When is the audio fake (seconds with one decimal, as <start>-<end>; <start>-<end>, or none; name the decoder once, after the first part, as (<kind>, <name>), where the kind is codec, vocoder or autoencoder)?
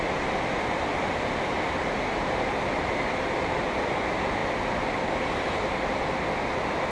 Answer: none